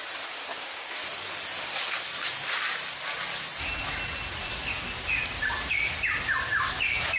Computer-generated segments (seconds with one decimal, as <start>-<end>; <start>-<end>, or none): none